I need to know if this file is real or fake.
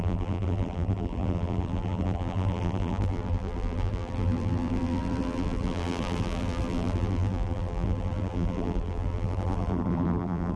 fake